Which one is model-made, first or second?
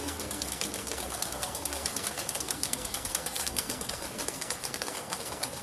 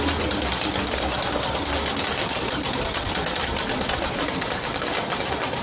first